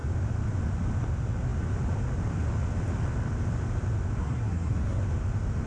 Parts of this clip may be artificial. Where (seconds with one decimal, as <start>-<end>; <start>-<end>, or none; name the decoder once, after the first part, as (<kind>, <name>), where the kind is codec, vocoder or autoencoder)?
4.2-5.0 (codec, SNAC)